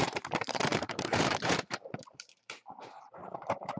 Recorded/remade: remade